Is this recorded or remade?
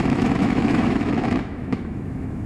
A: remade